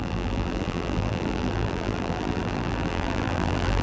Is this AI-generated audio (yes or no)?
yes